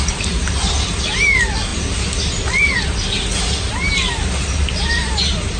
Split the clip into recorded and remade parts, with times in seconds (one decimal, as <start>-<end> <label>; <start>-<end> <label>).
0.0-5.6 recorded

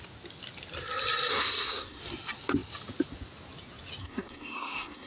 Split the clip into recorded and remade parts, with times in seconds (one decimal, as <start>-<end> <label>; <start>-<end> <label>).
0.0-1.3 recorded; 1.3-2.0 remade; 2.0-4.0 recorded; 4.0-5.1 remade

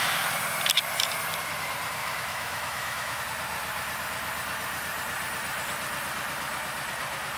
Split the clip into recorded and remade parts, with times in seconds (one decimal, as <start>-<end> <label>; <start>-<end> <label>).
0.0-2.0 recorded; 2.0-3.2 remade; 3.2-7.4 recorded

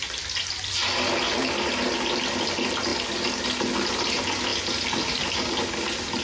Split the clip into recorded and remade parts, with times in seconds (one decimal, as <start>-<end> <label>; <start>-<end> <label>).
0.0-6.2 recorded